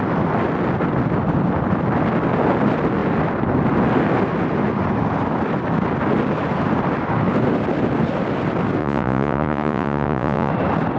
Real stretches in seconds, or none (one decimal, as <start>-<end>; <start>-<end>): 0.0-8.8; 10.5-11.0